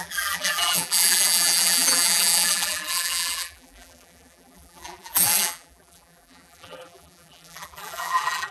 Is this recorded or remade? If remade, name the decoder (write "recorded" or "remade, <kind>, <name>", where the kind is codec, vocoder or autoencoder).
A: remade, vocoder, BigVGAN v2